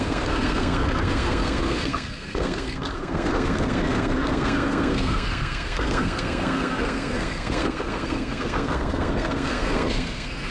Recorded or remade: remade